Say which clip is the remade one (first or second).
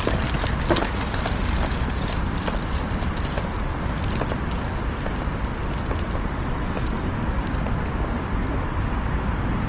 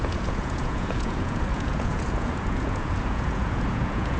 second